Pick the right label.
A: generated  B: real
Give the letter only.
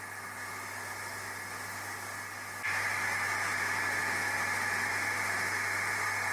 B